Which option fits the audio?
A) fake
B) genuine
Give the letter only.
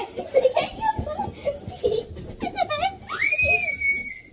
B